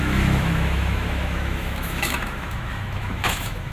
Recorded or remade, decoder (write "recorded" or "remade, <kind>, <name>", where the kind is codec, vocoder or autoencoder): remade, autoencoder, DAC-VAE